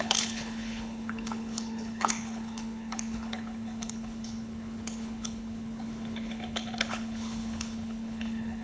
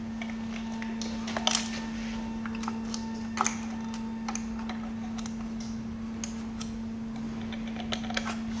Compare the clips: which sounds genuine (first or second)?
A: second